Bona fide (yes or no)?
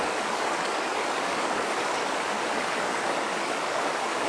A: no